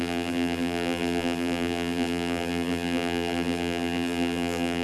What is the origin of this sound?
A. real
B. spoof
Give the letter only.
B